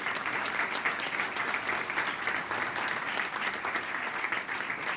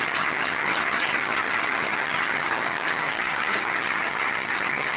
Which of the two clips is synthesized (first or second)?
second